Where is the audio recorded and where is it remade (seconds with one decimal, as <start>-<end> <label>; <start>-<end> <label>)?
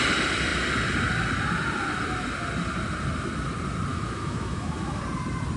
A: 0.0-3.9 recorded; 3.9-5.0 remade; 5.0-5.6 recorded